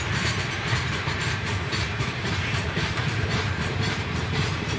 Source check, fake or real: fake